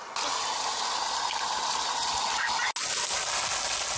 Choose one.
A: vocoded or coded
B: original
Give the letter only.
B